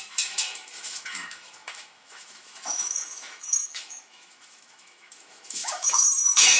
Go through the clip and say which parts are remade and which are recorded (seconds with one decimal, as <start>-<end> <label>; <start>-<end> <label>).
0.0-6.6 remade